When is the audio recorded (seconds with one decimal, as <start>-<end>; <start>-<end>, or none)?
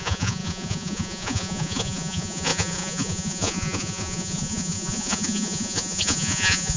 none